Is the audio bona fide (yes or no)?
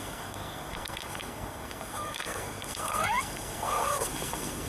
no